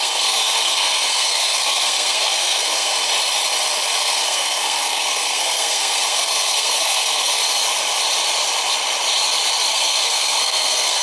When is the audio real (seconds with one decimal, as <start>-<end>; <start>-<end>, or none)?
2.9-4.0; 7.4-9.7